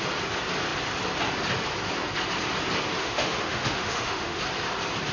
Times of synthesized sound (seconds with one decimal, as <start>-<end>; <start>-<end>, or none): 3.0-4.4